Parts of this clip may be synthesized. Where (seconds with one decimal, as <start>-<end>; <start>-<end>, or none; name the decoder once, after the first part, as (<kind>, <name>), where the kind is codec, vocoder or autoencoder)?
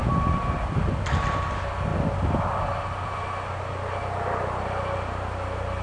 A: 0.0-1.9 (vocoder, BigVGAN v2); 4.6-5.8